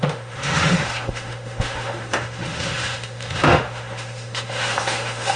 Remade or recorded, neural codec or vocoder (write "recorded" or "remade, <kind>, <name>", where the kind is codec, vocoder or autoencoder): remade, autoencoder, DAC-VAE